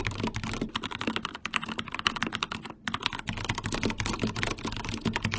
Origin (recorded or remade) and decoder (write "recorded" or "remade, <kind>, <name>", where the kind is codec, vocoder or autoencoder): recorded